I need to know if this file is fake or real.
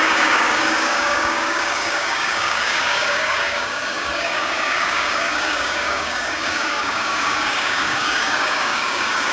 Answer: fake